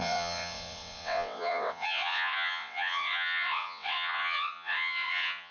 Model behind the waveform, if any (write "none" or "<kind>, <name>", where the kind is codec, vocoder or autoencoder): vocoder, WaveNeXt